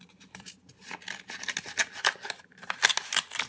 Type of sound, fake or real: real